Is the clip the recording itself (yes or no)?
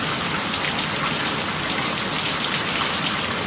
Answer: yes